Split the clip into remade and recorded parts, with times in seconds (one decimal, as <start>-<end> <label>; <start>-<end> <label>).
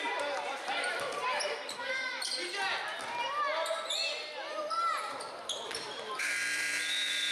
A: 0.0-1.1 remade; 1.1-5.1 recorded; 5.1-7.3 remade